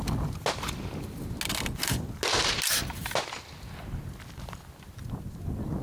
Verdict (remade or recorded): recorded